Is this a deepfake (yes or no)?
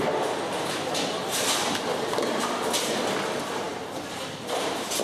no